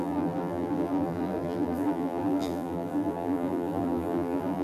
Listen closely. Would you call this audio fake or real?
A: fake